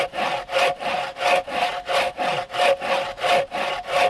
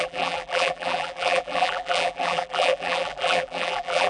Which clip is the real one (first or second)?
first